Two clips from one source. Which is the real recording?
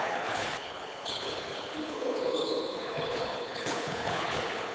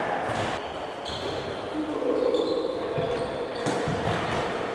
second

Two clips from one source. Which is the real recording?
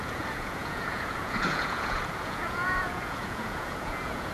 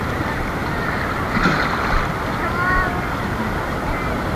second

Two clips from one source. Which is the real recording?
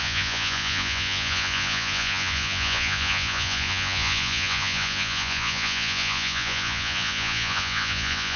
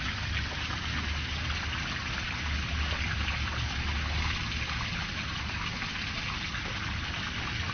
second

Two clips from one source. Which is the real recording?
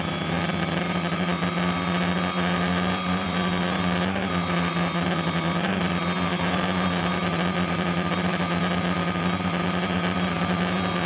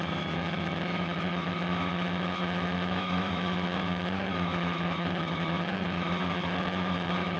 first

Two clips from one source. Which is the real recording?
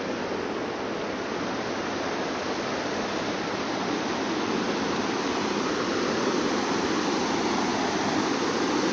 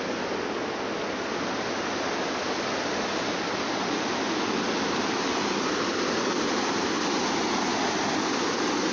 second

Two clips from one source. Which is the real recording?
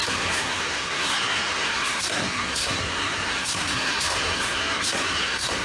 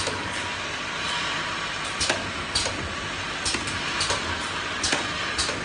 second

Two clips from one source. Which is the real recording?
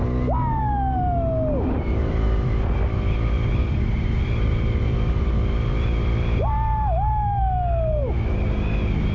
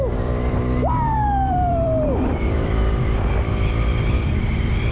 first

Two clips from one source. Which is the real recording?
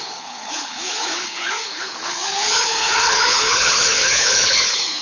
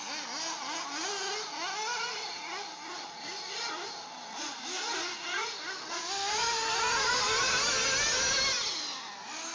second